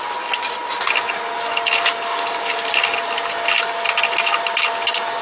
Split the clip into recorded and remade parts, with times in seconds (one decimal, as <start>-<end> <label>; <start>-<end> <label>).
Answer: 0.0-5.2 recorded